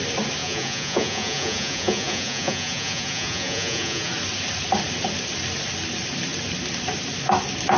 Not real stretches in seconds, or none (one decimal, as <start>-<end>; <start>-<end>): 0.4-4.1